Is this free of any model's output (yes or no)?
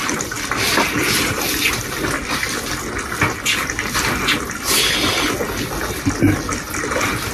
yes